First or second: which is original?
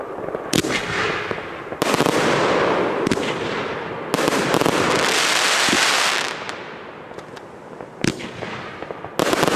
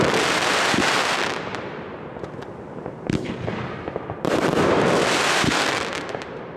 first